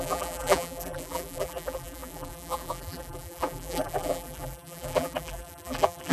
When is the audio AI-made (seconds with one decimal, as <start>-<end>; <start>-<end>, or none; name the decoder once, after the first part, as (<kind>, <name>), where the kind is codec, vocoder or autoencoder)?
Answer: 0.0-6.1 (vocoder, BigVGAN v2)